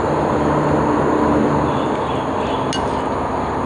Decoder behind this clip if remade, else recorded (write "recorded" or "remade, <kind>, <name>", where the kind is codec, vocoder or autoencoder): recorded